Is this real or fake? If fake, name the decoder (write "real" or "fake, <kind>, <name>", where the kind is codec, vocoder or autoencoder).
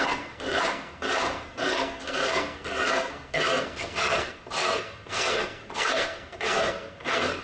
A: fake, codec, SNAC